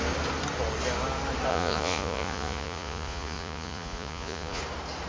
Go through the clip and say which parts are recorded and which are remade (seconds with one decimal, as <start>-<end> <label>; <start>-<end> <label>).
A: 0.0-1.5 recorded; 1.5-4.6 remade; 4.6-5.1 recorded